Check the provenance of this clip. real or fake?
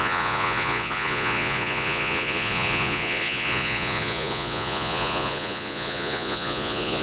fake